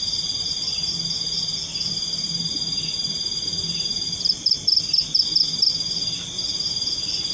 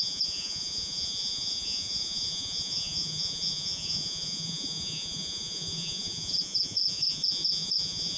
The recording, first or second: first